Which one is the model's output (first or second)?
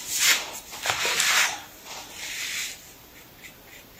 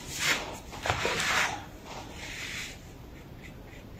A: second